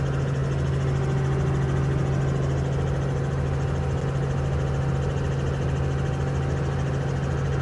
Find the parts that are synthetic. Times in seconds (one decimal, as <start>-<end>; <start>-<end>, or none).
none